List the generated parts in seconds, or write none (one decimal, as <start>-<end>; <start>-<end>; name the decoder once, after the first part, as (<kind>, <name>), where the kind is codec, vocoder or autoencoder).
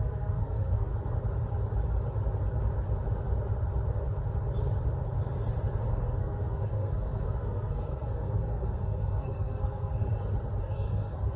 0.0-0.9 (codec, SNAC); 5.9-10.1; 10.6-11.4